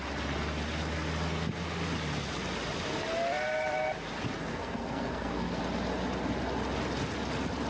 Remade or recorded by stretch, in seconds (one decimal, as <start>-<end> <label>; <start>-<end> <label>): 0.0-4.5 recorded; 4.5-5.6 remade; 5.6-7.7 recorded